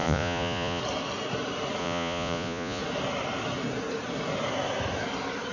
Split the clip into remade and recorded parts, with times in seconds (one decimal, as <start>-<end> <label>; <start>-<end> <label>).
0.0-0.8 remade; 0.8-1.8 recorded; 1.8-2.8 remade; 2.8-5.5 recorded

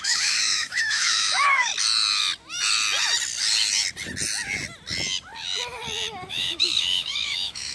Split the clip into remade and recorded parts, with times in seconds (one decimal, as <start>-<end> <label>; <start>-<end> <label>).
0.0-1.7 remade; 1.7-6.3 recorded; 6.3-7.7 remade